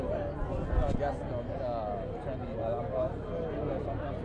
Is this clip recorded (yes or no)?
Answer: yes